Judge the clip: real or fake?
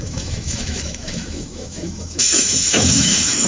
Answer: fake